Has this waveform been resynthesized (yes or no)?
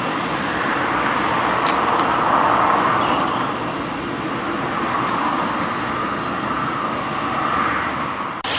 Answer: no